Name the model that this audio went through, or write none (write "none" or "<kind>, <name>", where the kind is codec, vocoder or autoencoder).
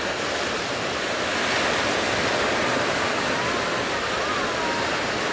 none